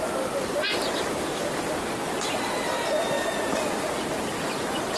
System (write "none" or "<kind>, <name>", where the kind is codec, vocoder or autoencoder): none